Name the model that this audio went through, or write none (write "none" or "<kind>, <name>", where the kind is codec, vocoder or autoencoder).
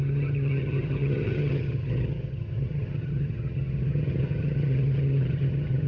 vocoder, HiFi-GAN